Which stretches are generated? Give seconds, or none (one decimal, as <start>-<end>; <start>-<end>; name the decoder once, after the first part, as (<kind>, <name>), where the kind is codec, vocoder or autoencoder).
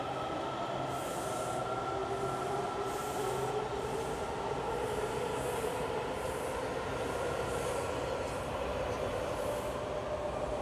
none